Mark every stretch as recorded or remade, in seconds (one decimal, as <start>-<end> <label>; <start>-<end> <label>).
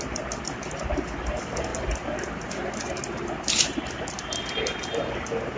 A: 0.0-5.6 recorded